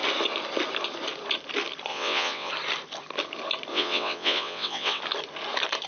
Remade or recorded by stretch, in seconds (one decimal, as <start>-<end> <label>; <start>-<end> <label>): 0.0-1.9 recorded; 1.9-2.5 remade; 2.5-3.7 recorded; 3.7-5.0 remade; 5.0-5.9 recorded